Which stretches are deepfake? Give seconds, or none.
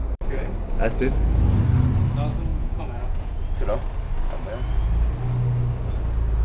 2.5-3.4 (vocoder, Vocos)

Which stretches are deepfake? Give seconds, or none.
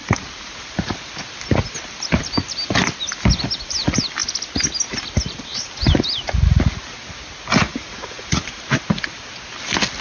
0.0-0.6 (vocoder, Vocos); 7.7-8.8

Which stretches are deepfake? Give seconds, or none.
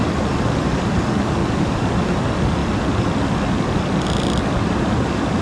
none